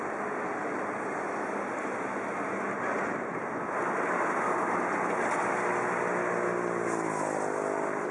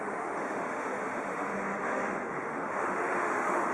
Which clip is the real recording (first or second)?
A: first